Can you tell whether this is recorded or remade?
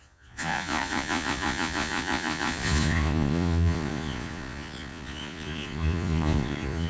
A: remade